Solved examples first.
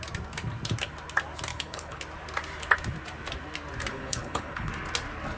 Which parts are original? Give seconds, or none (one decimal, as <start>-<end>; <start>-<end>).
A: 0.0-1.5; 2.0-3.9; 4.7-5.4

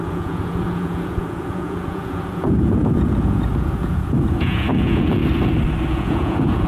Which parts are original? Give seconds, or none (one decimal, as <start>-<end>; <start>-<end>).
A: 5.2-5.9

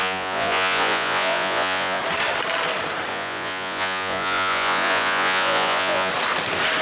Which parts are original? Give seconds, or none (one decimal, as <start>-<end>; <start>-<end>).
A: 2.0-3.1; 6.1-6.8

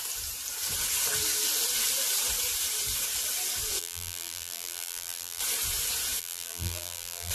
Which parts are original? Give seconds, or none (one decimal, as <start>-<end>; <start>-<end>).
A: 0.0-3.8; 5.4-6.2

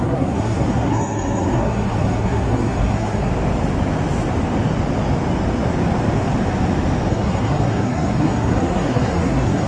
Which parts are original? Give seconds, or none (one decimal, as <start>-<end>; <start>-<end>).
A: 3.3-7.1

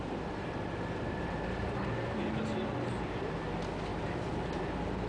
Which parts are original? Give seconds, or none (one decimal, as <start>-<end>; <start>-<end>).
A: 2.4-3.9; 4.6-5.1

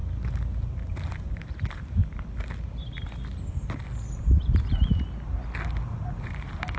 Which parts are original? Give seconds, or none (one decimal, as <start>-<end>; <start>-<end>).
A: 0.0-1.3; 2.0-6.1

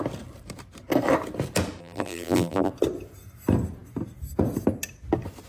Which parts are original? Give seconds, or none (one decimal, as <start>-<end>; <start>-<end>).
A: 0.0-1.8; 2.7-5.5